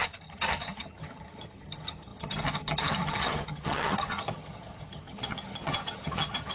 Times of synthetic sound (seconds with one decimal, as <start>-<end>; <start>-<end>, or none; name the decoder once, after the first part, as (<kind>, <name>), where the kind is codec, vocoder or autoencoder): 0.0-6.5 (vocoder, HiFi-GAN)